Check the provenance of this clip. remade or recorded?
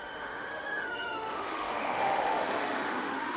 remade